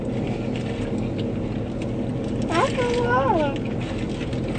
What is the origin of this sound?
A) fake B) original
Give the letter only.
B